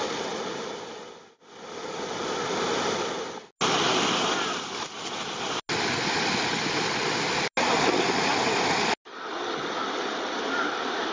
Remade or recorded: recorded